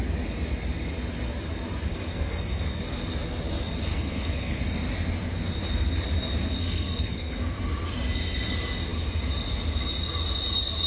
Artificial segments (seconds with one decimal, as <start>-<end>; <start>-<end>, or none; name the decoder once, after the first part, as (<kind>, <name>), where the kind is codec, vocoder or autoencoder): 1.9-2.8 (codec, SNAC); 3.9-4.6; 6.4-7.6